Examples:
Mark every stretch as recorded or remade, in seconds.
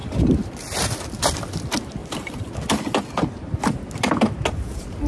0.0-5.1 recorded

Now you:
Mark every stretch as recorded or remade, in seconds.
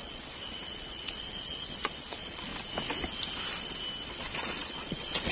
0.0-2.5 remade; 2.5-4.1 recorded; 4.1-5.3 remade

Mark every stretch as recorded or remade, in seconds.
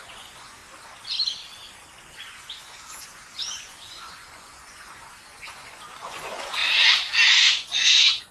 0.0-0.6 remade; 0.6-2.2 recorded; 2.2-6.6 remade; 6.6-7.3 recorded; 7.3-8.3 remade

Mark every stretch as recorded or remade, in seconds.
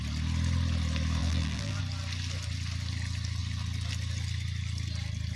0.0-1.2 recorded; 1.2-1.8 remade; 1.8-5.4 recorded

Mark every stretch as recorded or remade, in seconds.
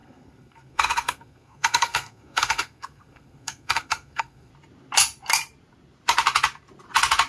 0.0-4.5 remade; 4.5-7.3 recorded